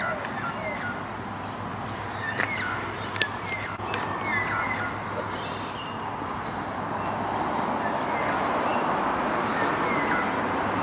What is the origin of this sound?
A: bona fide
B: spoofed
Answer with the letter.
A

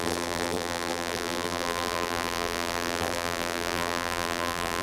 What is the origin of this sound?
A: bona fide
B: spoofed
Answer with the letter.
B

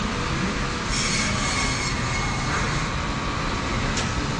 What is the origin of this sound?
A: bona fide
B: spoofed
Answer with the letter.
A